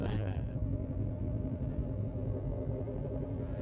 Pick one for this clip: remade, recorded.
remade